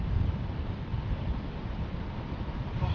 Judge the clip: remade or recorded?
recorded